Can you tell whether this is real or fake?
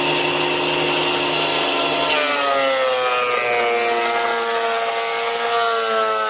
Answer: real